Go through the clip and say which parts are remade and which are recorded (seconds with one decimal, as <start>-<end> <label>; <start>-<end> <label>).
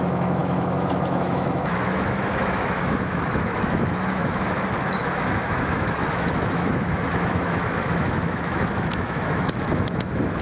0.0-10.4 remade